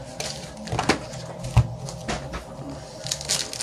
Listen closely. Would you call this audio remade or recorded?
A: recorded